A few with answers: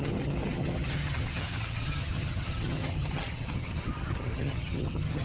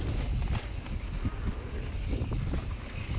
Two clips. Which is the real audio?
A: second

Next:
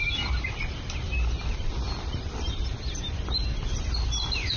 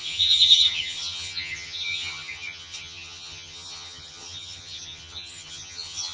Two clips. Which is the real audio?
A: first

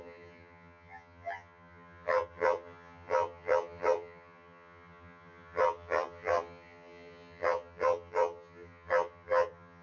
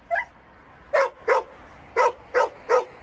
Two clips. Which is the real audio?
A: second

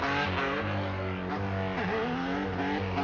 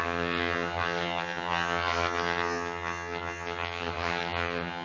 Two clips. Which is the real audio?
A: first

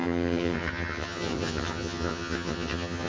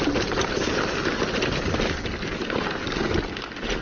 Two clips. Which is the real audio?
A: second